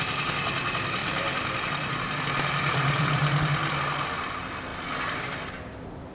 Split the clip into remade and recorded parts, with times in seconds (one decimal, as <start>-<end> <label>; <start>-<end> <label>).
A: 0.0-1.0 recorded; 1.0-2.2 remade; 2.2-2.7 recorded; 2.7-3.2 remade; 3.2-4.7 recorded; 4.7-5.5 remade; 5.5-6.1 recorded